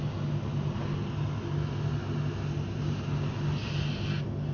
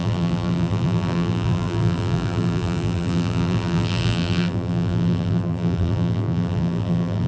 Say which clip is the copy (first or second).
second